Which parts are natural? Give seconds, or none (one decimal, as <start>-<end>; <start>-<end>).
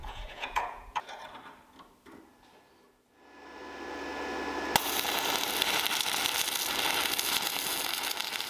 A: 1.2-8.5